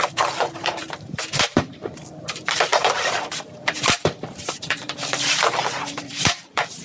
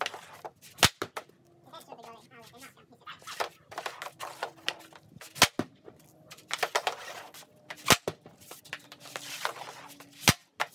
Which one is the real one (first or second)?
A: second